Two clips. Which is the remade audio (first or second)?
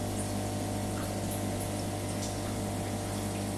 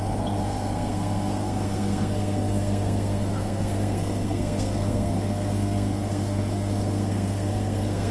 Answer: second